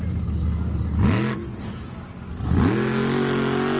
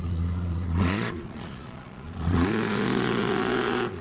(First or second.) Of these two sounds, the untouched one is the first